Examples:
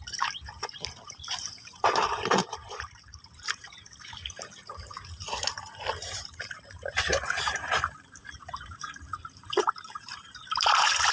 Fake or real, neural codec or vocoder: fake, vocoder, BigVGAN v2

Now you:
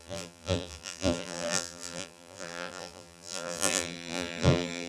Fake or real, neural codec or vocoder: fake, vocoder, BigVGAN v2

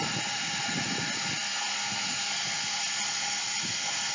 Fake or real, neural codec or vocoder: fake, vocoder, BigVGAN v2